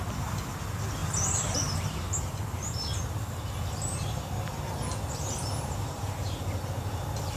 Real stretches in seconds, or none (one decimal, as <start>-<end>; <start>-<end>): 0.0-1.0; 3.0-5.4; 6.4-7.4